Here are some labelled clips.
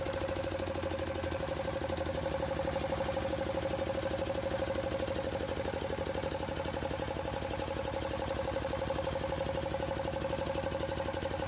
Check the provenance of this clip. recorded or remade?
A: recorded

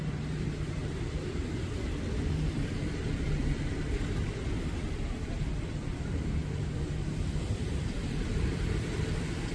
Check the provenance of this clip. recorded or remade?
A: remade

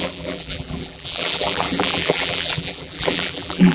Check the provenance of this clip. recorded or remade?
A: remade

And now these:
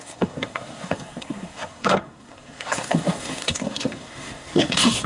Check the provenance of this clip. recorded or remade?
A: remade